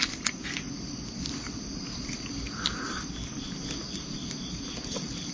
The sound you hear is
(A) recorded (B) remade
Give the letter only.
B